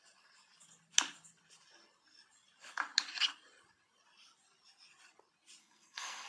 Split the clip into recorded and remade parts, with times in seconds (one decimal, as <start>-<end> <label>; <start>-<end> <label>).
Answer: 0.0-5.6 recorded; 5.6-6.3 remade